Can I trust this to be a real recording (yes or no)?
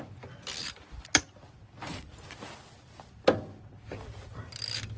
yes